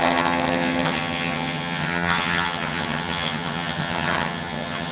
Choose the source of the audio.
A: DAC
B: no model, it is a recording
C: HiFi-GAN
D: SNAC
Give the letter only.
C